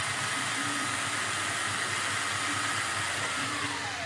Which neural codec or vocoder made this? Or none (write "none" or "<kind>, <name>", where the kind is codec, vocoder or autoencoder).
none